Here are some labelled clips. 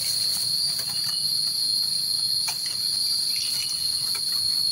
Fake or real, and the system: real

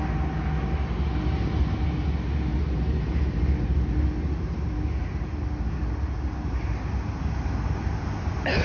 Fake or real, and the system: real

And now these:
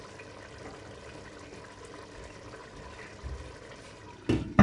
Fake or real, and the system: real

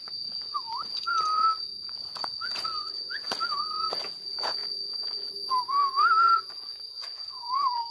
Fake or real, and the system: fake, vocoder, Vocos